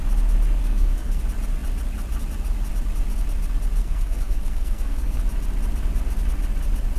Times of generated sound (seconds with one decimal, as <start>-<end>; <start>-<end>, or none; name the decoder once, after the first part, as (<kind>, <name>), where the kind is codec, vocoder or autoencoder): 0.6-1.2 (codec, SNAC); 3.8-5.2